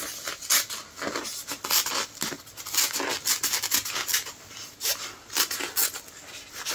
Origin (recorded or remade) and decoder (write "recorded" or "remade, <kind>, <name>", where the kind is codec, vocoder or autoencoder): recorded